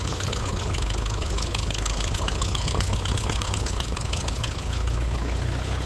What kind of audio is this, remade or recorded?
remade